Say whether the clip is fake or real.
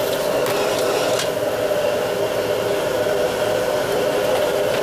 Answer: real